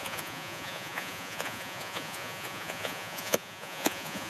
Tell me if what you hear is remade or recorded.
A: remade